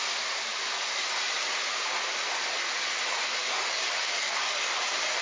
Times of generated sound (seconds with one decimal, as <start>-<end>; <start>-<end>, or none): 3.4-4.7